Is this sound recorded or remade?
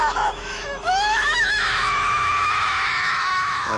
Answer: remade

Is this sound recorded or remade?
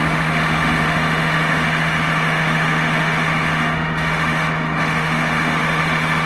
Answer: remade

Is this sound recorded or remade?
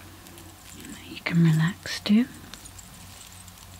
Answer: recorded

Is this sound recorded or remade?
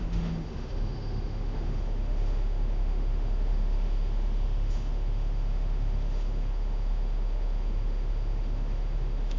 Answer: remade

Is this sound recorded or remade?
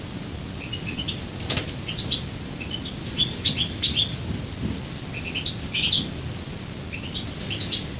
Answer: recorded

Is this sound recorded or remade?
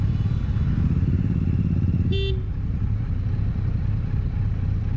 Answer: recorded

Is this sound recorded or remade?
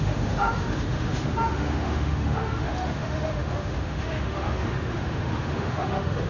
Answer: remade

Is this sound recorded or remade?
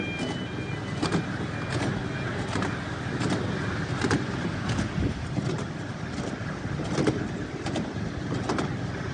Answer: recorded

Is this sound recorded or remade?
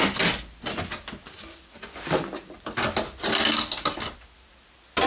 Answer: recorded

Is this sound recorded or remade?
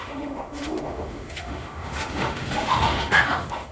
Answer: remade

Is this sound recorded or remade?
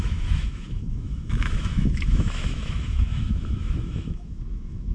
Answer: remade